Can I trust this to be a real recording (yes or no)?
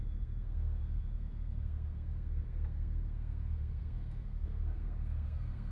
no